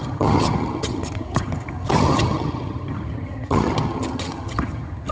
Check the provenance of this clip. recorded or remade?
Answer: remade